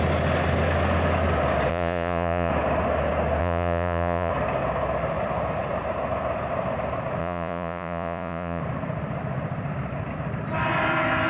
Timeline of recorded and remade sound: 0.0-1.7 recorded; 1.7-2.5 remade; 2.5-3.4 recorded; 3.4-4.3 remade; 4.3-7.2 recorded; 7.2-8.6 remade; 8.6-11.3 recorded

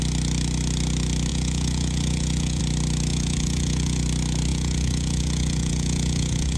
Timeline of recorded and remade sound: 0.0-1.3 recorded; 1.3-2.6 remade; 2.6-3.1 recorded; 3.1-4.0 remade; 4.0-4.5 recorded; 4.5-6.6 remade

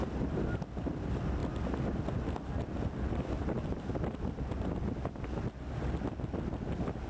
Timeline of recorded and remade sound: 0.0-7.1 recorded

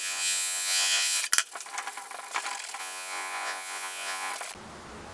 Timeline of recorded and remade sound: 0.0-1.2 remade; 1.2-2.8 recorded; 2.8-4.3 remade; 4.3-5.1 recorded